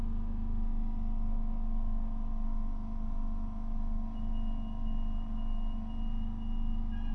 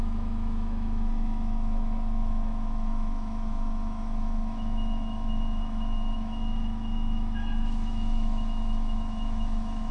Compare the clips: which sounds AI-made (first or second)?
second